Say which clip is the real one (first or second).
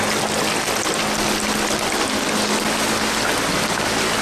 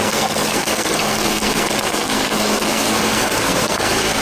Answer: first